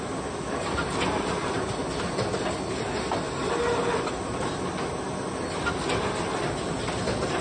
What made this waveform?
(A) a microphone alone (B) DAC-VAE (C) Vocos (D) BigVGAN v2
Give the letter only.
A